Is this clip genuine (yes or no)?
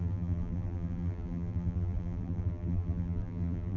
no